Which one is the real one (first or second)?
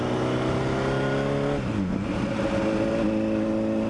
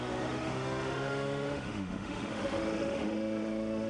first